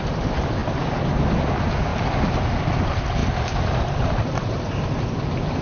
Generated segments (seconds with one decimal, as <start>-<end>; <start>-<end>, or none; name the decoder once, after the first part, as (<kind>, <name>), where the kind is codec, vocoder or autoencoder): 1.9-2.4 (vocoder, BigVGAN v2); 3.2-4.6